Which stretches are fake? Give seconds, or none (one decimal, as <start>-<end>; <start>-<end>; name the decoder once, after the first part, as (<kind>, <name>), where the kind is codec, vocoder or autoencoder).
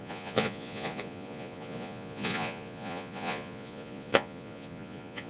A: 0.0-5.3 (vocoder, Vocos)